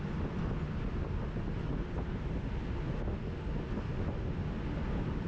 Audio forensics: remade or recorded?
recorded